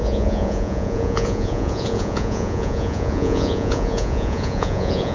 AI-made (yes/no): yes